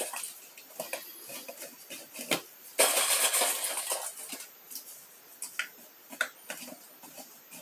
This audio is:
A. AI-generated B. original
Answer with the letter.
B